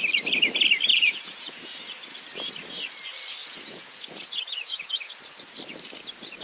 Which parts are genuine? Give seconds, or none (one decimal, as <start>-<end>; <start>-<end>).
0.0-0.9; 1.8-3.4; 5.1-6.4